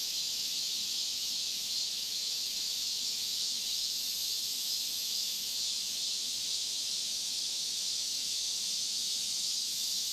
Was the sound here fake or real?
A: fake